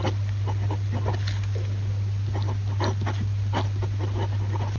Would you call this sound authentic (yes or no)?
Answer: yes